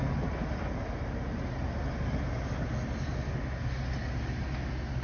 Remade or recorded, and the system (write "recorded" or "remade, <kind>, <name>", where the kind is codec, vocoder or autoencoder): recorded